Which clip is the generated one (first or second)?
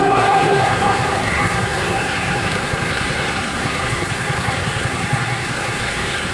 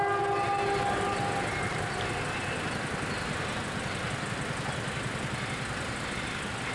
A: first